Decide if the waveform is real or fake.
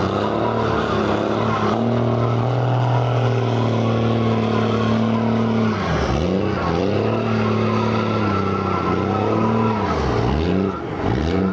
real